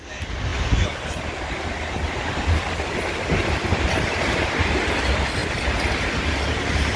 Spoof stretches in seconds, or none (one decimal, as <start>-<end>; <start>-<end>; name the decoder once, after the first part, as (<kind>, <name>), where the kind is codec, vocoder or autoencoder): none